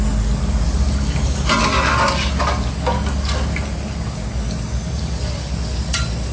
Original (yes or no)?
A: yes